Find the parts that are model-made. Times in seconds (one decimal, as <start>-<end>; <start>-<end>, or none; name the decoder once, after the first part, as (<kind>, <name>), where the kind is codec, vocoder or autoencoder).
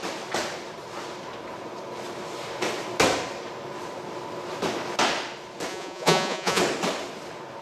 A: 5.7-6.6 (vocoder, Vocos)